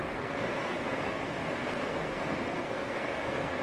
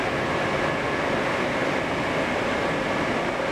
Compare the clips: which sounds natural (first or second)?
second